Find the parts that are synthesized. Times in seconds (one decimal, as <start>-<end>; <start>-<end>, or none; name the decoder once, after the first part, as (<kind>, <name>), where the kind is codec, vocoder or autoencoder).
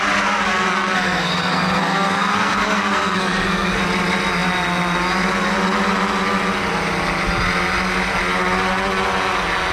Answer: 0.5-3.8 (codec, SNAC)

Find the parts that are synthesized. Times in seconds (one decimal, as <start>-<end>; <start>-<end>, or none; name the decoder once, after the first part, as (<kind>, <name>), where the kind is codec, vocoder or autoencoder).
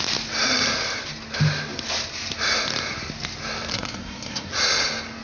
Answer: 3.7-4.5 (codec, SNAC)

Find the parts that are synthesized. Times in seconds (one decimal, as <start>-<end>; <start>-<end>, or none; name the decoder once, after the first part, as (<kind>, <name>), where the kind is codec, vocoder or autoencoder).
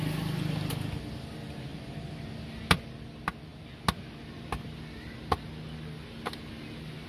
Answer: 1.7-2.8 (vocoder, BigVGAN v2)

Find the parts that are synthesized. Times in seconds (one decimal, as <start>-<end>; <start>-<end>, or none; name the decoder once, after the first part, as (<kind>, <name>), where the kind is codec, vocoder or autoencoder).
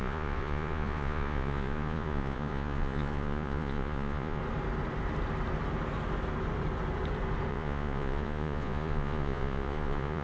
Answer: 0.0-4.4 (vocoder, Vocos); 7.5-10.2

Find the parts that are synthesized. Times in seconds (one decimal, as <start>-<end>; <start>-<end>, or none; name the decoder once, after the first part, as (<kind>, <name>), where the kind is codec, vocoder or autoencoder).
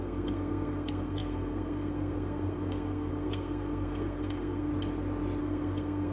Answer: 0.0-4.7 (codec, SNAC); 5.4-6.1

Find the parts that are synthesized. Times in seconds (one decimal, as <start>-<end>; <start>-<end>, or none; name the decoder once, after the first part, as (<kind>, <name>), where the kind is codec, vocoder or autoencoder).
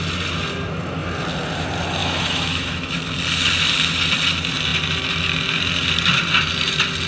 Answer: 2.0-3.0 (autoencoder, DAC-VAE)